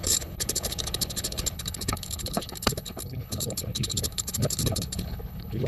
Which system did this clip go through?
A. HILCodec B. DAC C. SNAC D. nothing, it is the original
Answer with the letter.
A